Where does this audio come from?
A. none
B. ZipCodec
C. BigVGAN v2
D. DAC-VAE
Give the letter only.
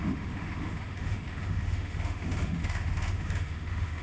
D